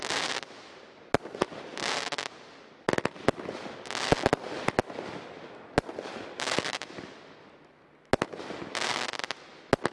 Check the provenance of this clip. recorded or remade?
recorded